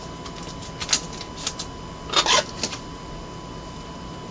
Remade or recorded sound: recorded